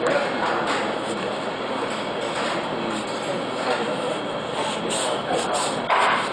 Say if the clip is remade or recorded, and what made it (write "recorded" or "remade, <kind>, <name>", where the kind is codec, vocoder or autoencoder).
recorded